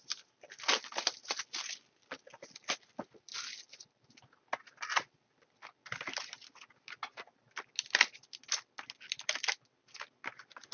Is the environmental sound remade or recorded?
recorded